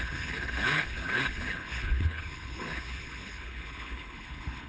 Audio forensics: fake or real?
fake